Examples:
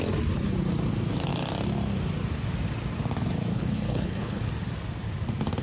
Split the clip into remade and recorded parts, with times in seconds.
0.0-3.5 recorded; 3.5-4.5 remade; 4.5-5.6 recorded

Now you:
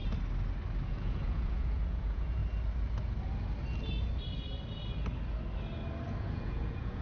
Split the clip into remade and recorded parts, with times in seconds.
0.0-0.9 recorded; 0.9-2.4 remade; 2.4-6.2 recorded; 6.2-7.0 remade

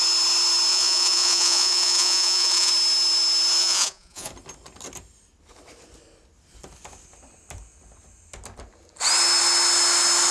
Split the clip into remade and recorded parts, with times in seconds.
0.0-0.7 recorded; 0.7-2.7 remade; 2.7-3.6 recorded; 3.6-4.3 remade; 4.3-10.3 recorded

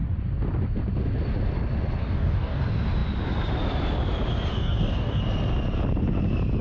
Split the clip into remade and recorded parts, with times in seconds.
0.0-2.0 recorded; 2.0-2.6 remade; 2.6-4.5 recorded; 4.5-5.2 remade; 5.2-6.6 recorded

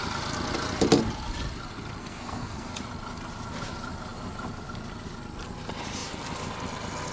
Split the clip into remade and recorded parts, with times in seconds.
0.0-2.0 recorded; 2.0-2.7 remade; 2.7-7.1 recorded

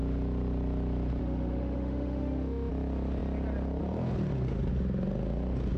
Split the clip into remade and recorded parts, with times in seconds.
0.0-1.2 recorded; 1.2-2.7 remade; 2.7-5.8 recorded

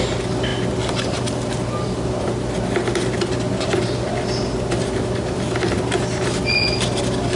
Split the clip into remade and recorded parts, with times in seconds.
0.0-7.4 recorded